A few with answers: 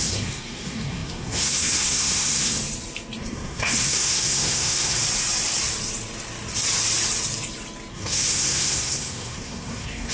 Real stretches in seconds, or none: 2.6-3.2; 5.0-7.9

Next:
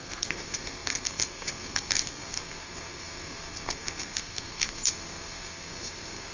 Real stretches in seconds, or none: none

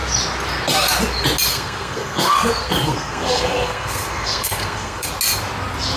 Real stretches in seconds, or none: 0.0-1.5; 5.1-6.0

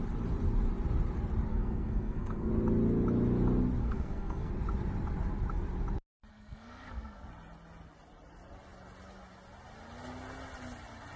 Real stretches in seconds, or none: 0.0-1.5; 2.5-3.8; 4.5-6.3; 7.3-11.2

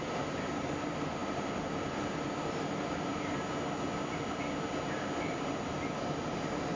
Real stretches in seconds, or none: 0.0-6.8

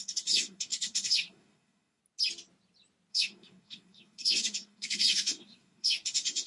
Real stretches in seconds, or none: 2.0-3.1

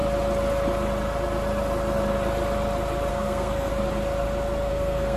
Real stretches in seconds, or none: 0.0-3.1; 3.7-4.7

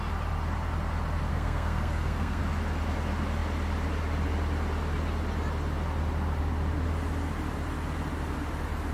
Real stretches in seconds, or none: 0.0-1.3; 2.4-8.9